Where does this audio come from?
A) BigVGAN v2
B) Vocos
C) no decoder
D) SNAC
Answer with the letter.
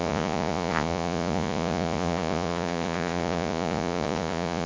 B